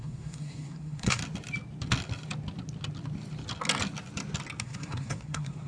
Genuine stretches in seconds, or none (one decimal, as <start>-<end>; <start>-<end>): 1.2-4.6